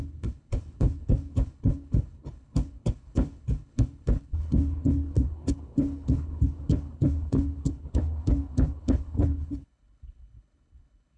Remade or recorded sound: remade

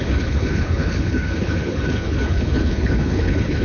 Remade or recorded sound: remade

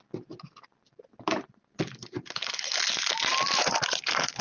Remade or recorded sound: recorded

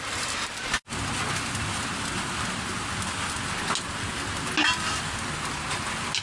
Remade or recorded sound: recorded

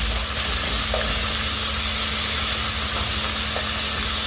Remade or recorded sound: recorded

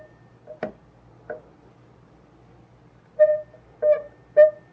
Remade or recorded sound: recorded